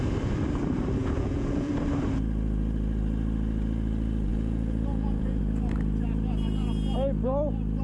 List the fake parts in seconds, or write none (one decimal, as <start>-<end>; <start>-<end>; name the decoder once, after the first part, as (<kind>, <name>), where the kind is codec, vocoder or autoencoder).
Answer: 1.0-1.7 (vocoder, Vocos); 4.3-5.4